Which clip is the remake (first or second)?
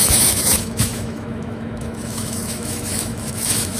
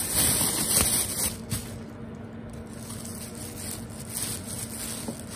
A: first